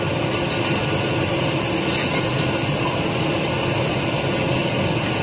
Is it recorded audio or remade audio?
recorded